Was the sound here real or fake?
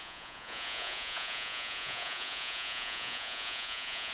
fake